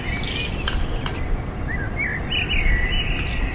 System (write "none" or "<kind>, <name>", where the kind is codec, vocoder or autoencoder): none